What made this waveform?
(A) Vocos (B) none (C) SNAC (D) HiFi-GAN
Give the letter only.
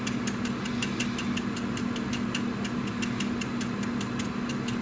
B